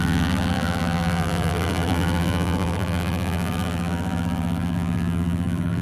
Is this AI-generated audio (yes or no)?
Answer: yes